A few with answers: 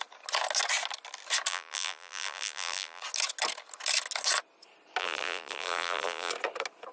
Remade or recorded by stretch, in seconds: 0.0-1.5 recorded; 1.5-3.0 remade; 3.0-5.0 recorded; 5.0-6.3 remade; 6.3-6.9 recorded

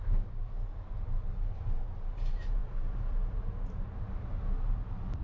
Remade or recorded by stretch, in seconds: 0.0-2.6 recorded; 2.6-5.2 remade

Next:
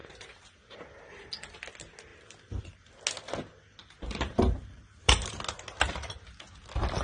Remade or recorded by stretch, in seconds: 0.0-1.0 remade; 1.0-2.1 recorded; 2.1-2.9 remade; 2.9-3.8 recorded; 3.8-5.3 remade; 5.3-7.0 recorded

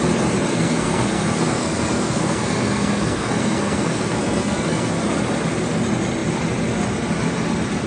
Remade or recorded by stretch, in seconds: 0.0-0.5 recorded; 0.5-4.9 remade; 4.9-7.9 recorded

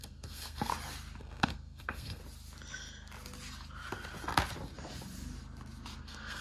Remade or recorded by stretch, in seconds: 0.0-0.7 remade; 0.7-1.2 recorded; 1.2-2.2 remade; 2.2-6.0 recorded; 6.0-6.4 remade

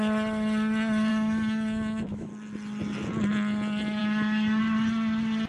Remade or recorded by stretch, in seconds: 0.0-1.1 recorded; 1.1-2.3 remade; 2.3-4.0 recorded; 4.0-4.6 remade; 4.6-5.5 recorded

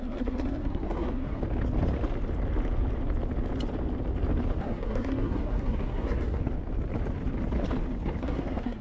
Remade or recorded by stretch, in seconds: 0.0-1.4 remade; 1.4-4.6 recorded; 4.6-6.4 remade; 6.4-8.2 recorded; 8.2-8.8 remade

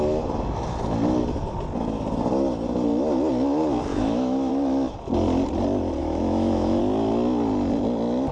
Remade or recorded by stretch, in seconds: 0.0-3.9 recorded; 3.9-4.5 remade; 4.5-6.0 recorded; 6.0-6.8 remade; 6.8-8.3 recorded